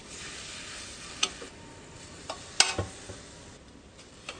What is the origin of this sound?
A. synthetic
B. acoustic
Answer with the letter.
B